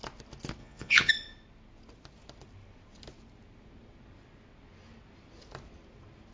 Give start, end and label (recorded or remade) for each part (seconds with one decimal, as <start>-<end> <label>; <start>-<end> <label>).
0.0-0.6 recorded; 0.6-1.1 remade; 1.1-6.3 recorded